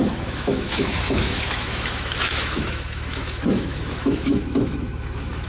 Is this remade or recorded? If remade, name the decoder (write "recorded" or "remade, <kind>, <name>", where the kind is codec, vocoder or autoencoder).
remade, autoencoder, DAC-VAE